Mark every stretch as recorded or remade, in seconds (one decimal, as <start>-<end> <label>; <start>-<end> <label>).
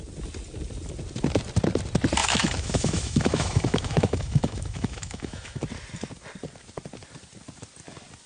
0.0-2.2 recorded; 2.2-5.6 remade; 5.6-8.3 recorded